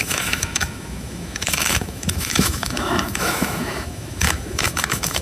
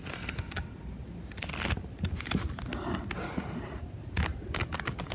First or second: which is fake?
first